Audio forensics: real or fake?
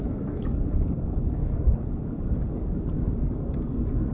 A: fake